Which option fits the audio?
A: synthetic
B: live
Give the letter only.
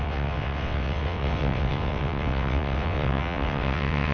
A